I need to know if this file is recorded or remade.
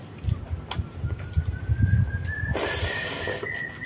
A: recorded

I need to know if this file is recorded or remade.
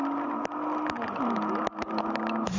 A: recorded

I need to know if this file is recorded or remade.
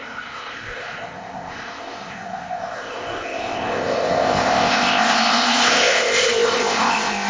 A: remade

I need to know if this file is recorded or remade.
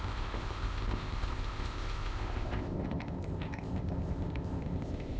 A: remade